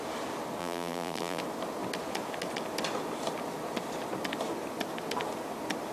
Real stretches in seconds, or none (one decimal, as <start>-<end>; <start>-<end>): 0.0-0.6; 1.4-5.9